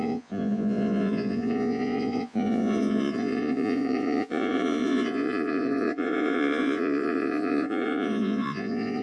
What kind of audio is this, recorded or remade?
remade